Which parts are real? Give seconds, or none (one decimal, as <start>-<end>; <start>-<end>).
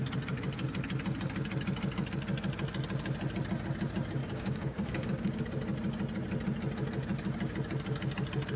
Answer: 0.0-4.2; 5.4-8.6